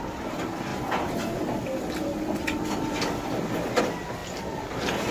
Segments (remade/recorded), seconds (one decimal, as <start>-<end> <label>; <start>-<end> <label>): 0.0-5.1 recorded